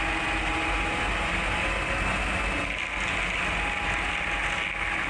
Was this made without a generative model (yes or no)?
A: yes